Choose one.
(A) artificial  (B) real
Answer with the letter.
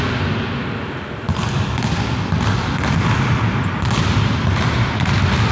B